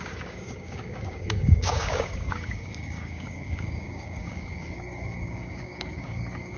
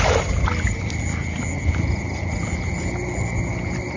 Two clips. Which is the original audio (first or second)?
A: second